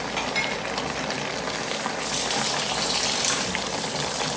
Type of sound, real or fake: real